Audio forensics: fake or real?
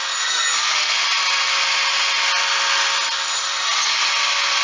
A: real